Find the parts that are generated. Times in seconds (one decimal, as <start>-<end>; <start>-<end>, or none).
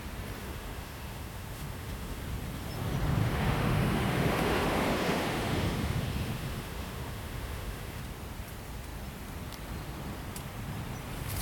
0.4-2.2; 3.2-8.0